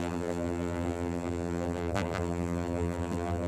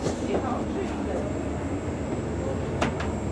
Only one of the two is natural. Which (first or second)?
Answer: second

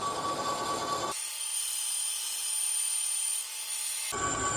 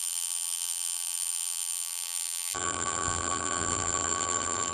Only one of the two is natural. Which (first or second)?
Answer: first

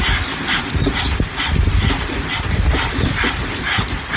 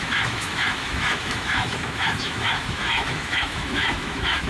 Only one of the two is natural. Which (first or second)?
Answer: first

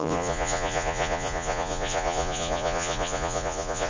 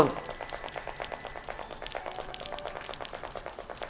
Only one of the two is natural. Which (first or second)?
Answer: second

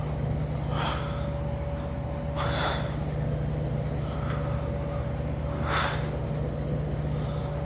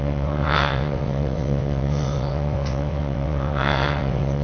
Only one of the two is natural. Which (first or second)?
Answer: first